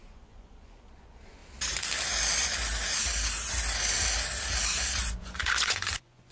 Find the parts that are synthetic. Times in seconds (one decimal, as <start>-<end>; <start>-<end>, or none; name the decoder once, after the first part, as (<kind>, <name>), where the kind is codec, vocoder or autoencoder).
0.0-1.4 (vocoder, Vocos); 5.0-6.3